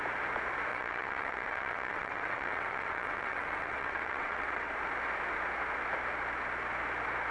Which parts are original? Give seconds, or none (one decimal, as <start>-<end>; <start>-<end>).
0.0-0.7; 4.7-7.3

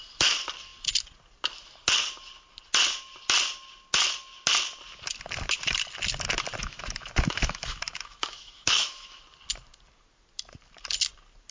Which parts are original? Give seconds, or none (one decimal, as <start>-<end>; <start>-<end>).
0.0-6.6; 9.2-11.5

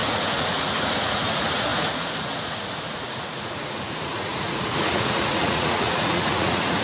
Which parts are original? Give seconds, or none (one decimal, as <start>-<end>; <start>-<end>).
none

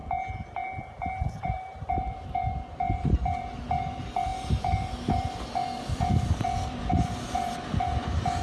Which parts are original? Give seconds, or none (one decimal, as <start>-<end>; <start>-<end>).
0.0-1.2

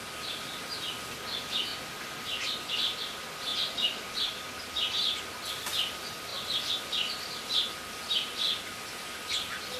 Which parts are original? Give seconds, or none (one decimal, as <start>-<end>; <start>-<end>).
0.0-9.8

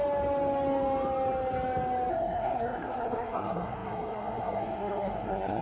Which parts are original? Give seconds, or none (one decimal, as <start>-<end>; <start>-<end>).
0.0-2.1

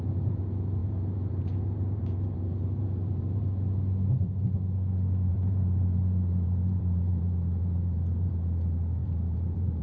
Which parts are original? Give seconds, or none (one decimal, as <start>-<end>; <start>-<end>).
0.0-0.8; 3.4-5.3; 8.3-9.0

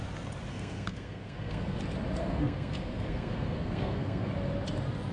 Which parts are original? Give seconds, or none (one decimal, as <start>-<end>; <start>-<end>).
0.0-0.5; 1.8-2.2; 4.3-5.1